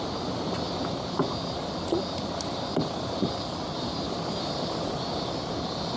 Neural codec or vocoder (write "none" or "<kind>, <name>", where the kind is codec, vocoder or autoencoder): none